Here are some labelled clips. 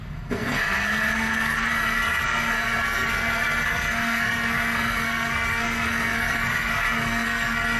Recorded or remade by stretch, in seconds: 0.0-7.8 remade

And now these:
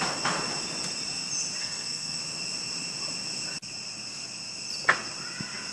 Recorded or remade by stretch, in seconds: 0.0-1.6 recorded; 1.6-2.2 remade; 2.2-5.7 recorded

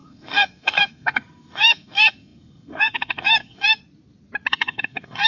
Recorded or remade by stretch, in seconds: 0.0-3.8 remade; 3.8-4.5 recorded; 4.5-5.3 remade